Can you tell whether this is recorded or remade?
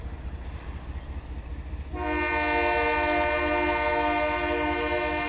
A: recorded